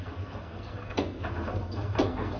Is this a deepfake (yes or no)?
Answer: yes